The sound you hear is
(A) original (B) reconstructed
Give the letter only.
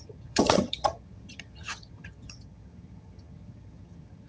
B